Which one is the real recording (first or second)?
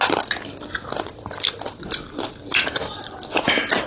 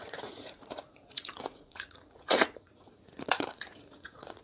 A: first